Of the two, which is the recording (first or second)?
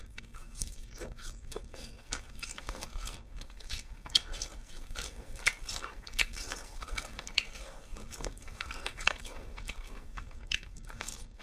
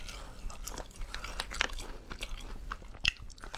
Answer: second